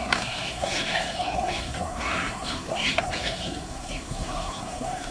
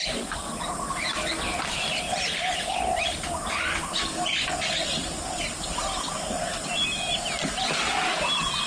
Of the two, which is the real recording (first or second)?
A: second